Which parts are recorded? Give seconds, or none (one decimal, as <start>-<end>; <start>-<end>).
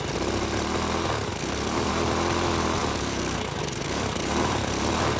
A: 0.0-1.3; 1.9-2.8; 4.7-5.2